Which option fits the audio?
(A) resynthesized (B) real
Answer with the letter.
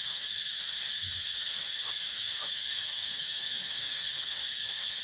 A